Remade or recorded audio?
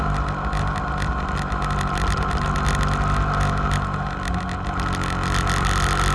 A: recorded